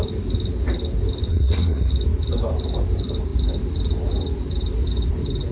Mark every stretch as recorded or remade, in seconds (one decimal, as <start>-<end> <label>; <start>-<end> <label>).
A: 0.0-1.3 recorded; 1.3-1.9 remade; 1.9-5.5 recorded